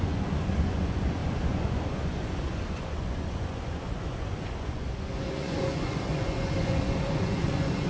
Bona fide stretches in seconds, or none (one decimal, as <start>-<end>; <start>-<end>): none